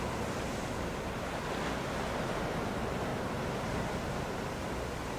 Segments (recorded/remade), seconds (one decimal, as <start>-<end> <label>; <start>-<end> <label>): 0.0-5.2 recorded

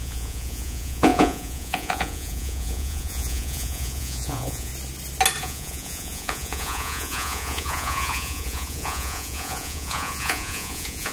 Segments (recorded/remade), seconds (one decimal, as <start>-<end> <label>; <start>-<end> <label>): 0.0-4.7 remade; 4.7-5.4 recorded; 5.4-11.1 remade

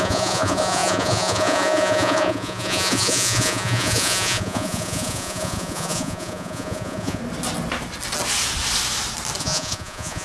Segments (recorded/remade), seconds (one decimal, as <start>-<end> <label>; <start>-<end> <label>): 0.0-7.2 remade; 7.2-9.4 recorded; 9.4-10.2 remade

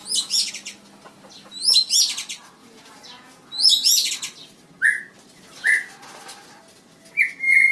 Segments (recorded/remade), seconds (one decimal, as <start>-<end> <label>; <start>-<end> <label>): 0.0-0.5 remade; 0.5-2.6 recorded; 2.6-4.1 remade; 4.1-7.7 recorded

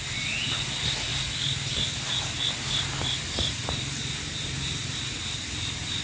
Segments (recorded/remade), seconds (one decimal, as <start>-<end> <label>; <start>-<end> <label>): 0.0-3.6 recorded; 3.6-5.3 remade; 5.3-6.0 recorded

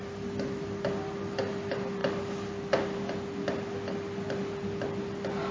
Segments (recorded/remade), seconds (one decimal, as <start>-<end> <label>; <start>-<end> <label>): 0.0-5.5 recorded